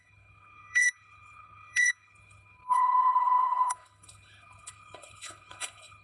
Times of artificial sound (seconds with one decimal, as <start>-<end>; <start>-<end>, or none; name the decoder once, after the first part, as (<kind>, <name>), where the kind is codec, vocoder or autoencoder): 0.0-6.0 (codec, HILCodec)